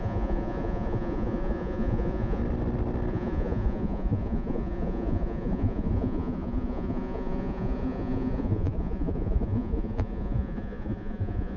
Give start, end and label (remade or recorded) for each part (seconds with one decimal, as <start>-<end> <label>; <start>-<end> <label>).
0.0-2.4 remade; 2.4-3.1 recorded; 3.1-11.6 remade